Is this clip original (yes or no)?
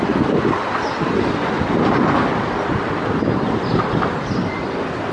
yes